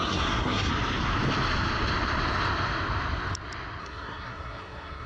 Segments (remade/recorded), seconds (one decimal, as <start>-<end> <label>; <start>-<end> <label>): 0.0-0.7 remade; 0.7-3.8 recorded; 3.8-5.1 remade